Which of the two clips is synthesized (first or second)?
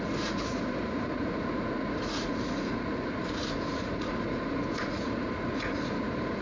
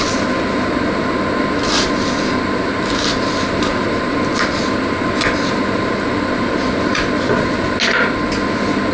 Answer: first